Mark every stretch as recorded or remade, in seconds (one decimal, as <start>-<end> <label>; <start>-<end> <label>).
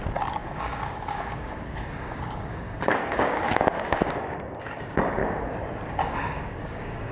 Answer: 0.0-5.2 remade; 5.2-5.9 recorded; 5.9-7.1 remade